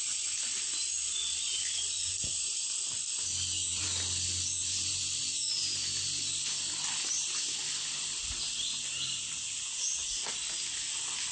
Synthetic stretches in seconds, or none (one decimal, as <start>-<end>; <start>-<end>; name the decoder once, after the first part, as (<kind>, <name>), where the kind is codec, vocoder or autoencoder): none